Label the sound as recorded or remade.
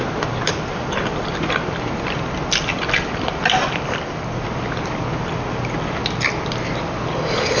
recorded